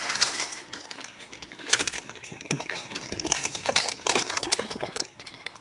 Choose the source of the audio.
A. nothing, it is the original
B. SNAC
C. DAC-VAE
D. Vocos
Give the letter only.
B